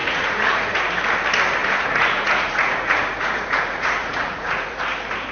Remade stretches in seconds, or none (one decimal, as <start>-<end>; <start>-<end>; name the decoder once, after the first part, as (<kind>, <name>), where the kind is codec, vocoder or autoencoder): 0.0-0.9 (vocoder, Vocos); 1.6-4.8